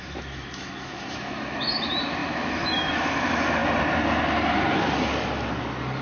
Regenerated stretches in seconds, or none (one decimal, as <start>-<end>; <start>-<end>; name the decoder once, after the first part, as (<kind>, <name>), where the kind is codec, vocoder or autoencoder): 0.0-3.6 (autoencoder, DAC-VAE)